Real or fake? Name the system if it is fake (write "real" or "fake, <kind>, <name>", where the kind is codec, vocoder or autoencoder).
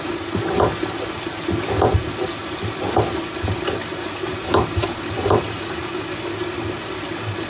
real